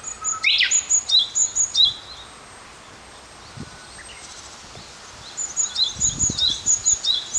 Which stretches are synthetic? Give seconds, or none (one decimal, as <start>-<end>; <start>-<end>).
none